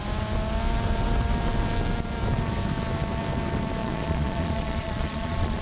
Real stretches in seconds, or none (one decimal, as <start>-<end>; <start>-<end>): 0.0-3.8